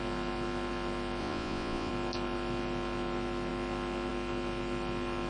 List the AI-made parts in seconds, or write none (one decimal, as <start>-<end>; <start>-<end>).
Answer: 1.2-1.9